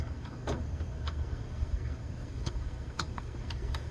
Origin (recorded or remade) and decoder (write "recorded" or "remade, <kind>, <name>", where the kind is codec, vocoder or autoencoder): remade, codec, SNAC